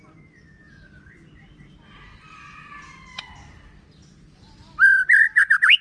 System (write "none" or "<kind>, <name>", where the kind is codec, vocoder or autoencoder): none